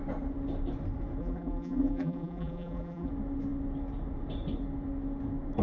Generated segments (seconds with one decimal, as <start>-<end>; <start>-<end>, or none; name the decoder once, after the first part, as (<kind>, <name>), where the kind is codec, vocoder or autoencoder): 1.2-3.1 (vocoder, BigVGAN v2)